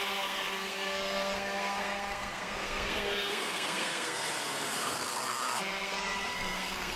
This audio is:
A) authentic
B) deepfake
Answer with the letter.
B